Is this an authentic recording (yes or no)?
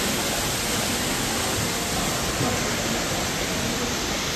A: yes